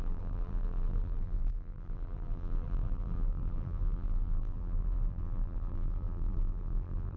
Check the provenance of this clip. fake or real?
fake